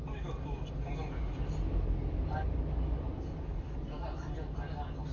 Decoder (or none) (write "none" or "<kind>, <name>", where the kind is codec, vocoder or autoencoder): none